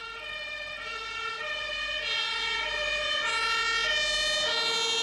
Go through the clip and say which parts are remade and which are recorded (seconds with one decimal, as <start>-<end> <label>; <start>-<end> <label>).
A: 0.0-5.0 recorded